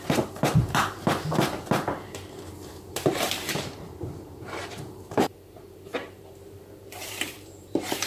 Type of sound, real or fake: fake